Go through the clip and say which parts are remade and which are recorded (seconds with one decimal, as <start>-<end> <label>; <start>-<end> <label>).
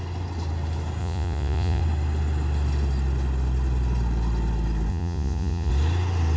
0.0-1.0 recorded; 1.0-1.8 remade; 1.8-4.9 recorded; 4.9-5.7 remade; 5.7-6.4 recorded